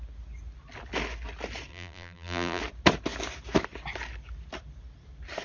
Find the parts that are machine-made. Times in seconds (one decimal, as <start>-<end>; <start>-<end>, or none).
1.7-2.6